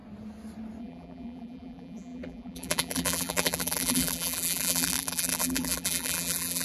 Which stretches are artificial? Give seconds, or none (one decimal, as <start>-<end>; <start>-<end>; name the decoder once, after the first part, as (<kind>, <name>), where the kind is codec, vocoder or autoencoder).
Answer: 0.8-6.6 (vocoder, BigVGAN v2)